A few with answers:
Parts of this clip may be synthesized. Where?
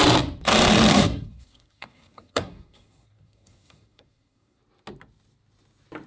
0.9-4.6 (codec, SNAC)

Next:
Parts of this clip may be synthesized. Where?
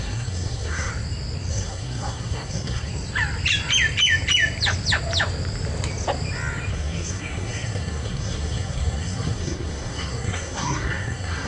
0.0-0.9 (codec, SNAC); 1.5-2.9; 6.7-11.5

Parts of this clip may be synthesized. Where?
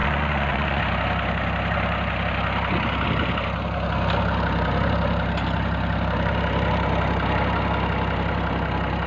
0.0-0.8 (vocoder, Vocos)